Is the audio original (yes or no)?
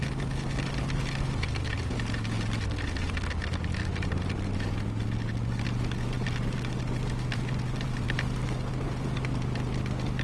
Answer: yes